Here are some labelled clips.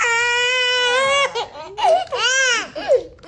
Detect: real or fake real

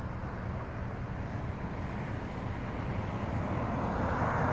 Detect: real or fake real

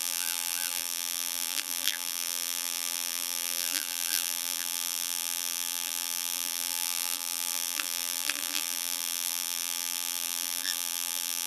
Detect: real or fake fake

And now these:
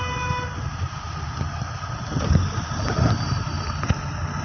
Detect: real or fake real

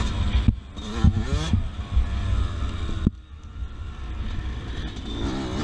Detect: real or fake real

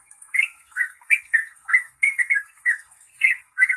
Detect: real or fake fake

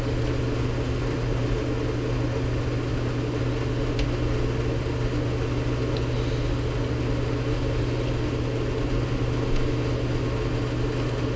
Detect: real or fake real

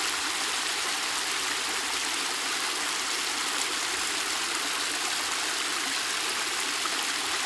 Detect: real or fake real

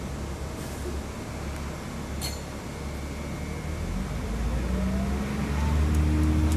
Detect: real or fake real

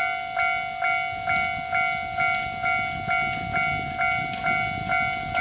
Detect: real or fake real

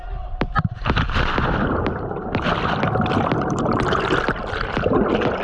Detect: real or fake real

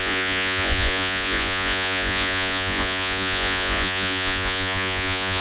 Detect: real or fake fake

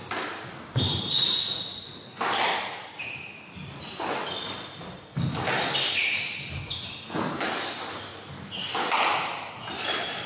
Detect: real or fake real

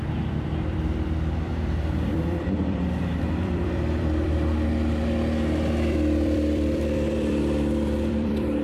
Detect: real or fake fake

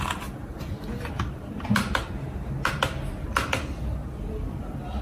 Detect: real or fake fake